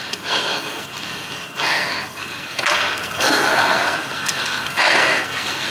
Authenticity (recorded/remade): remade